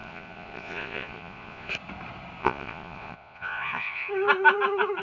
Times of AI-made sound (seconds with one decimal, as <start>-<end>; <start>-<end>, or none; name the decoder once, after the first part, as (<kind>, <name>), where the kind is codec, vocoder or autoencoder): 0.0-1.7 (vocoder, Vocos); 2.4-4.1